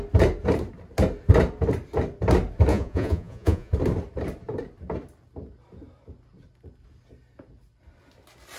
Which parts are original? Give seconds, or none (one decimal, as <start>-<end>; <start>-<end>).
0.0-2.7; 3.7-8.6